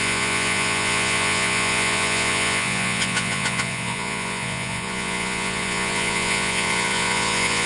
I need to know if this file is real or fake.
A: fake